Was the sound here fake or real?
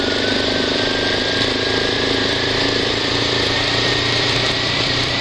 fake